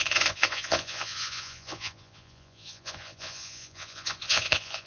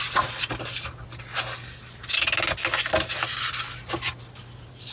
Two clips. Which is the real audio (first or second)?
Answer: second